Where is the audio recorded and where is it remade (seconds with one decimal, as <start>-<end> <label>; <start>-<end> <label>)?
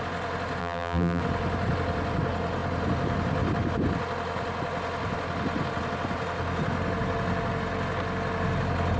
0.0-0.6 recorded; 0.6-1.2 remade; 1.2-9.0 recorded